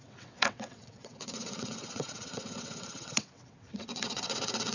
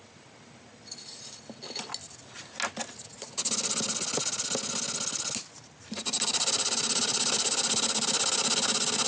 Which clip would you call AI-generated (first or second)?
first